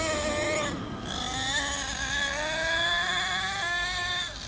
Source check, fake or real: real